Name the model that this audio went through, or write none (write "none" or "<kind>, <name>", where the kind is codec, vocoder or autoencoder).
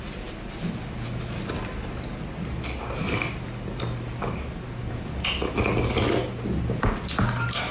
none